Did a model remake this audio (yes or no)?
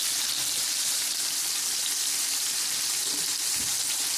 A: no